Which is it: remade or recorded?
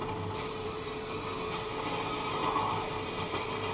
recorded